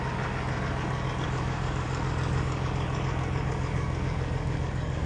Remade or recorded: remade